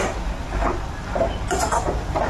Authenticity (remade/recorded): recorded